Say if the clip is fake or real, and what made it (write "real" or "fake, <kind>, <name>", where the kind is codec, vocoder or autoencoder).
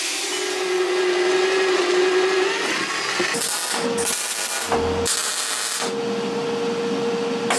real